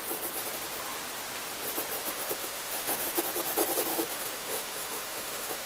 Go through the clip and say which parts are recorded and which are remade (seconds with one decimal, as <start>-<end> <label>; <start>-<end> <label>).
0.0-2.0 recorded; 2.0-3.2 remade; 3.2-3.9 recorded; 3.9-5.7 remade

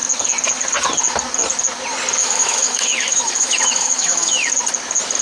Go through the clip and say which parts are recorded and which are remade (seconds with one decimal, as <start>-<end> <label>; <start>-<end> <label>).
0.0-2.2 recorded; 2.2-4.5 remade; 4.5-5.2 recorded

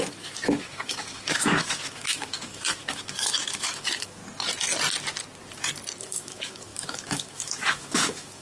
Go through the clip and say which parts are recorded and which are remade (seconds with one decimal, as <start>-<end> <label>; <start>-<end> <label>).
0.0-4.2 remade; 4.2-6.0 recorded; 6.0-8.4 remade

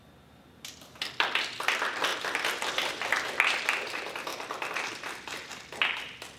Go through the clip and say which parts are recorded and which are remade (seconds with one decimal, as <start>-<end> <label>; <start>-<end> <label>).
0.0-6.4 recorded

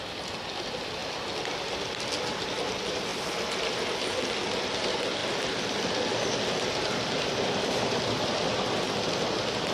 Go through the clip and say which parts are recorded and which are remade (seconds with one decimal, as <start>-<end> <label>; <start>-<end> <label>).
0.0-9.7 recorded